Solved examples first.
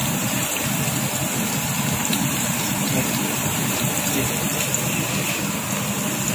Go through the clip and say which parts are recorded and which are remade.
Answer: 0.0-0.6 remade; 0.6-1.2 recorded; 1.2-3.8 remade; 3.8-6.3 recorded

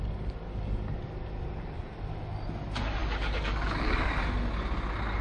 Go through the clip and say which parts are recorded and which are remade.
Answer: 0.0-3.0 recorded; 3.0-4.2 remade; 4.2-5.2 recorded

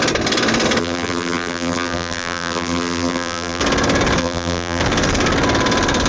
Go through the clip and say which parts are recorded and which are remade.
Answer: 0.0-0.8 recorded; 0.8-3.6 remade; 3.6-4.2 recorded; 4.2-4.8 remade; 4.8-6.1 recorded

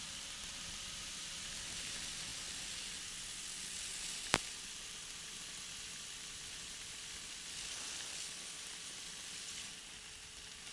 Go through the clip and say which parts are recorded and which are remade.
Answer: 0.0-10.7 recorded

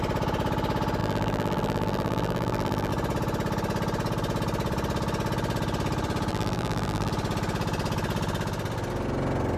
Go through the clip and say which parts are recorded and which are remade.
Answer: 0.0-1.0 recorded; 1.0-2.9 remade; 2.9-6.3 recorded; 6.3-7.1 remade; 7.1-9.6 recorded

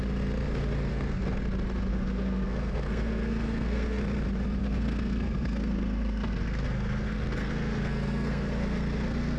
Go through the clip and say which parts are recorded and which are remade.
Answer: 0.0-0.9 recorded; 0.9-1.4 remade; 1.4-1.9 recorded; 1.9-4.0 remade; 4.0-4.6 recorded; 4.6-9.4 remade